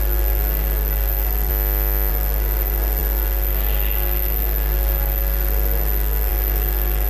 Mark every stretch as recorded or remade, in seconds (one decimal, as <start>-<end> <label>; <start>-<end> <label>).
0.0-1.5 remade; 1.5-2.1 recorded; 2.1-7.1 remade